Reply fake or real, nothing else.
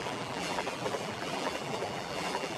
fake